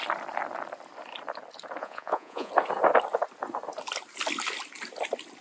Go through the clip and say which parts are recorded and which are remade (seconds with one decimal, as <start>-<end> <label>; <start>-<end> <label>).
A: 0.0-1.8 recorded; 1.8-2.5 remade; 2.5-5.4 recorded